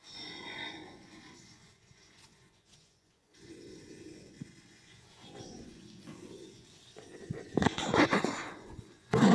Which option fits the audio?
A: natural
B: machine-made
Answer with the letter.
B